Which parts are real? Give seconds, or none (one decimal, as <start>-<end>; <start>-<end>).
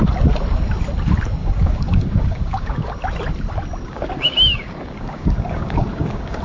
0.0-1.4; 2.9-3.8